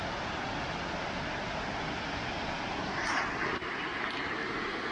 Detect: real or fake real